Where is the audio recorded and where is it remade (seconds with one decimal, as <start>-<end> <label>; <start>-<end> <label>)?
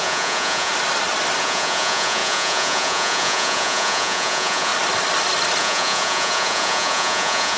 0.0-0.7 remade; 0.7-1.4 recorded; 1.4-4.7 remade; 4.7-5.6 recorded; 5.6-7.6 remade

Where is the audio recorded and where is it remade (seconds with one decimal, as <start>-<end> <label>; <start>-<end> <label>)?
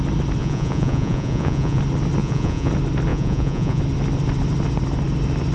0.0-0.4 recorded; 0.4-1.8 remade; 1.8-2.2 recorded; 2.2-2.7 remade; 2.7-3.1 recorded; 3.1-3.8 remade; 3.8-5.5 recorded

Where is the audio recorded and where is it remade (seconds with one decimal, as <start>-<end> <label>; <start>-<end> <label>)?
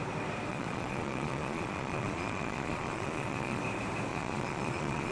0.0-0.5 recorded; 0.5-3.6 remade; 3.6-4.1 recorded; 4.1-5.1 remade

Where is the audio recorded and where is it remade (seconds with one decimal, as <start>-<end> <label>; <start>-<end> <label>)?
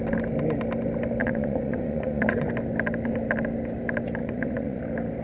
0.0-1.2 recorded; 1.2-2.5 remade; 2.5-4.2 recorded; 4.2-4.8 remade; 4.8-5.2 recorded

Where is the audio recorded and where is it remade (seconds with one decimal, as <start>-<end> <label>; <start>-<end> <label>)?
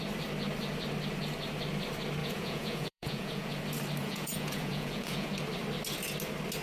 0.0-2.2 recorded; 2.2-3.6 remade; 3.6-4.0 recorded; 4.0-5.3 remade; 5.3-6.6 recorded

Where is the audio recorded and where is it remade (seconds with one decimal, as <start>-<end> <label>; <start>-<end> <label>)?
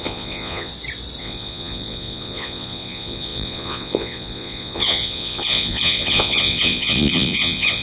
0.0-0.7 remade; 0.7-1.2 recorded; 1.2-7.8 remade